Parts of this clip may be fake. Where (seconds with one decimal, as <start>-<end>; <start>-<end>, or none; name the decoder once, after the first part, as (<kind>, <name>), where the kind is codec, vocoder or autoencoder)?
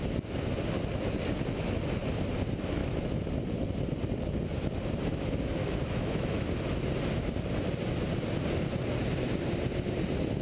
2.8-3.3 (autoencoder, DAC-VAE); 5.6-6.6